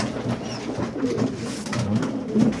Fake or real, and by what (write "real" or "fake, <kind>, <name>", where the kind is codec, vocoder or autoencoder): real